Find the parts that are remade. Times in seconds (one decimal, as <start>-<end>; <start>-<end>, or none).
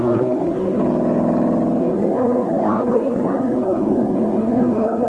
0.0-0.8; 1.8-5.1